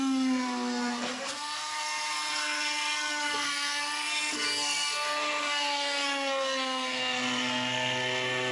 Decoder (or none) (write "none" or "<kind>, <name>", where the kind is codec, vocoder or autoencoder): codec, SNAC